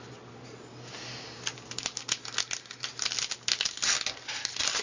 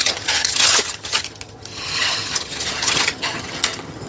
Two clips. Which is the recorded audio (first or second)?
first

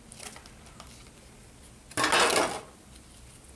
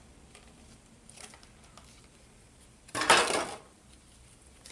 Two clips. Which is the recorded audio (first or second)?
first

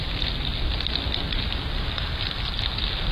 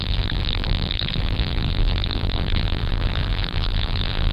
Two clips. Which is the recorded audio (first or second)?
first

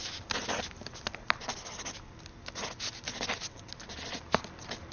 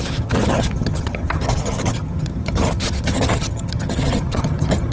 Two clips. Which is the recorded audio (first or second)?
first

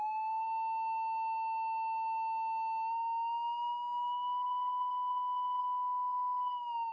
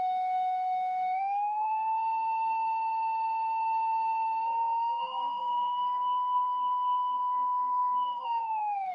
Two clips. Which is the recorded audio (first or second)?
first